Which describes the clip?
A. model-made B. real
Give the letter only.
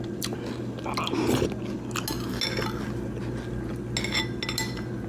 B